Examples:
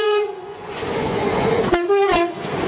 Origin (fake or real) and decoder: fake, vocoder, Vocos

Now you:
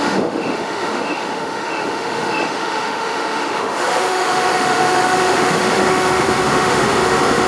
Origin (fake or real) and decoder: fake, autoencoder, DAC-VAE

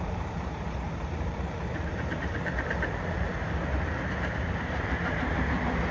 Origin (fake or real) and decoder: fake, vocoder, BigVGAN v2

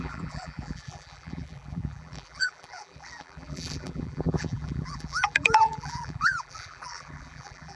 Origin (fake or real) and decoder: fake, vocoder, BigVGAN v2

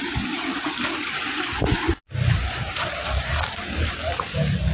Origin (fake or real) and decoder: real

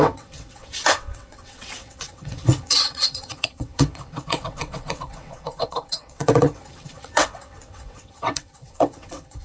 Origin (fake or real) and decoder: fake, vocoder, WaveNeXt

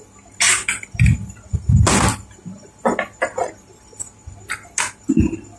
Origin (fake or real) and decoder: real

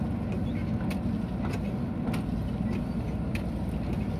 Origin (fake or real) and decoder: real